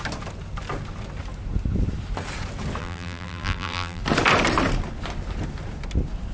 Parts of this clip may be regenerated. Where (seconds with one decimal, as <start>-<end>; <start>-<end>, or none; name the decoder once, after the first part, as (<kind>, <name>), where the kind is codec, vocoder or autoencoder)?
2.8-4.0 (vocoder, BigVGAN v2)